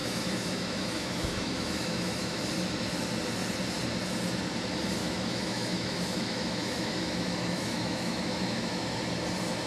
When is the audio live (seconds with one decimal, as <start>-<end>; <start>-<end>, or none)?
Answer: 2.4-5.0; 8.8-9.7